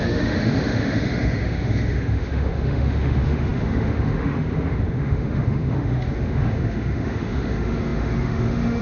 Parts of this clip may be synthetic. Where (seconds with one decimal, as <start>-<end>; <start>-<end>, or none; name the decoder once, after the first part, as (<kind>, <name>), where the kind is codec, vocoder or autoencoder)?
0.0-8.8 (autoencoder, DAC-VAE)